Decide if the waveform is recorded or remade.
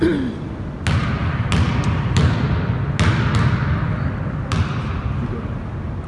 recorded